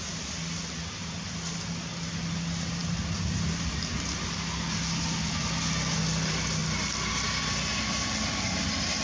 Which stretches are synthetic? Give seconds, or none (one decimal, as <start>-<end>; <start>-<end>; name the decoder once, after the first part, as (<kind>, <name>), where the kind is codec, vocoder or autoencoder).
none